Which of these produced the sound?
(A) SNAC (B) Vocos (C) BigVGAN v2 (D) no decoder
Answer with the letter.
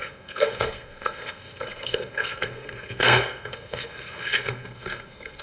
A